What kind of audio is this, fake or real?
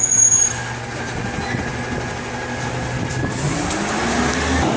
real